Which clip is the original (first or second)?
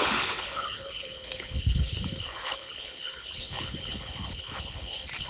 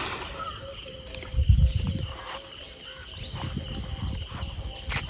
second